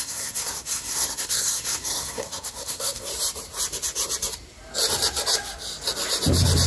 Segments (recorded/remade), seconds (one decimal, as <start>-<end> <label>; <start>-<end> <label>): 0.0-3.1 remade; 3.1-6.7 recorded